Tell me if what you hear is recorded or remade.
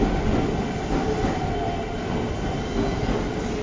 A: recorded